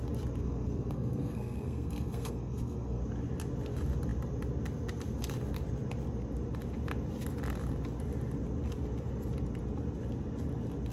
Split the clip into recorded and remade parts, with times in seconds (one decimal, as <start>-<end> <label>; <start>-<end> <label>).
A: 0.0-0.4 recorded; 0.4-3.0 remade; 3.0-10.9 recorded